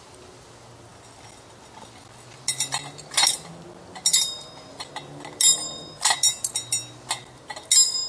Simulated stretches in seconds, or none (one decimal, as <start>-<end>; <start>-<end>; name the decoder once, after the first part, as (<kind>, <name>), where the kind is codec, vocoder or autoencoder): none